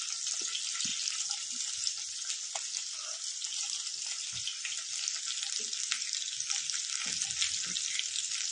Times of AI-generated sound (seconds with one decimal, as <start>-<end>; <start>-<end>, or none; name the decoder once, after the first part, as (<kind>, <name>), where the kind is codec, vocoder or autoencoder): none